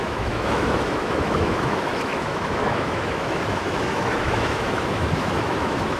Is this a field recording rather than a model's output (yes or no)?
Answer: no